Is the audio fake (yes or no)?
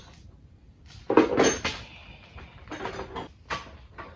no